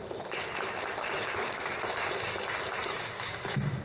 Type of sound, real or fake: fake